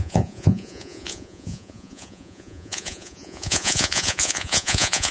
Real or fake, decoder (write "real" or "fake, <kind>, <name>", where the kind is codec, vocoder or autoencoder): fake, vocoder, Vocos